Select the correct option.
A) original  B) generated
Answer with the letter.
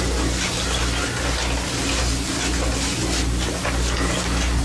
A